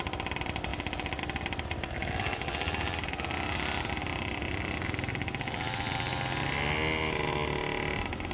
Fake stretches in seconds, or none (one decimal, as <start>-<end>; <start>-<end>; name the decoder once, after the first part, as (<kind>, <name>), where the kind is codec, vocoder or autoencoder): 0.7-1.2 (vocoder, BigVGAN v2); 2.0-6.1